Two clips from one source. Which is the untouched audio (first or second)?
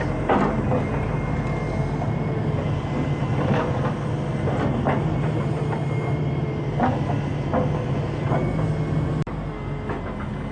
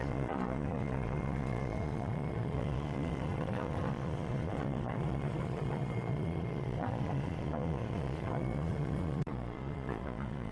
first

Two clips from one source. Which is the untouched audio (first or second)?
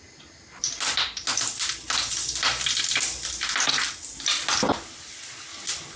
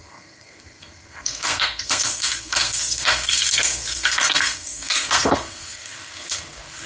first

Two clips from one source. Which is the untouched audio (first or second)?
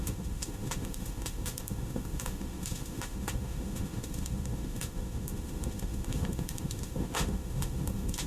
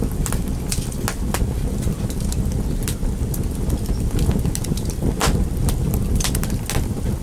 second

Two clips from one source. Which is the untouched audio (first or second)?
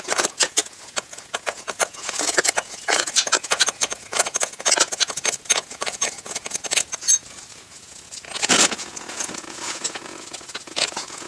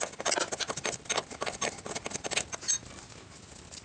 second